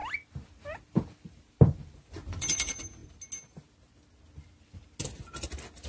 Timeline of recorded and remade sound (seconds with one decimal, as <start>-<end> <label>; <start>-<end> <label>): 0.0-5.9 recorded